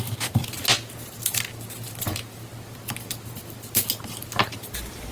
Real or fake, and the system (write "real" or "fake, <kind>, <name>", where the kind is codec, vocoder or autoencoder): real